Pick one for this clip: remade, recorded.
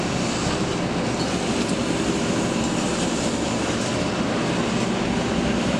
recorded